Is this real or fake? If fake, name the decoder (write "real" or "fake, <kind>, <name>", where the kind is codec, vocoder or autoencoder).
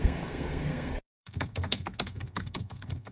fake, codec, SNAC